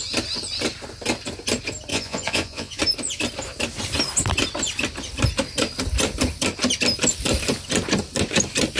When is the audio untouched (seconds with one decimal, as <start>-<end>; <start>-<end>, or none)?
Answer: 0.0-1.9; 2.8-8.8